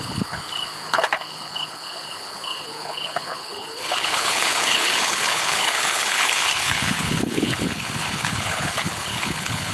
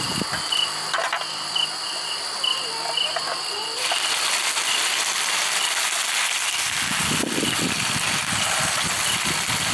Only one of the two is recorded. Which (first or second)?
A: second